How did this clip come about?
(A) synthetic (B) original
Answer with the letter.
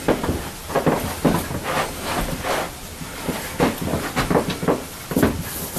B